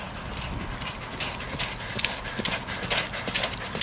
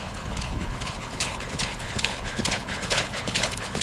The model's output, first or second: second